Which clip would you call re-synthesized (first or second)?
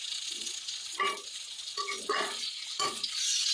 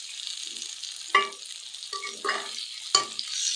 first